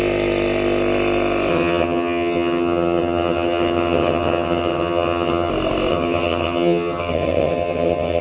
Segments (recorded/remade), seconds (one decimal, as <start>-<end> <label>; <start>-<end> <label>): 0.0-1.5 recorded; 1.5-5.5 remade; 5.5-5.9 recorded; 5.9-8.2 remade